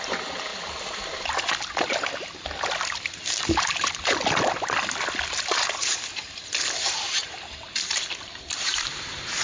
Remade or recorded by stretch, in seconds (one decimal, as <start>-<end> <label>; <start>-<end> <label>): 0.0-9.4 recorded